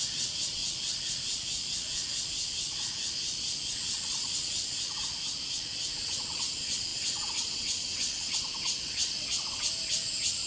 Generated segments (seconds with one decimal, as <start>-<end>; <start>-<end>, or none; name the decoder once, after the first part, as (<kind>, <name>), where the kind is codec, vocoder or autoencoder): 0.0-0.6 (vocoder, WaveNeXt); 3.7-4.6; 5.9-10.5